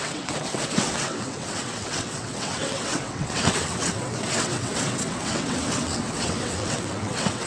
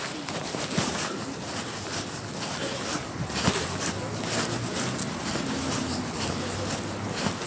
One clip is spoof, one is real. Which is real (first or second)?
second